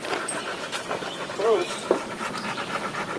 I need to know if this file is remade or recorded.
remade